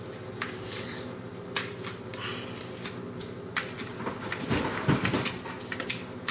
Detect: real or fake real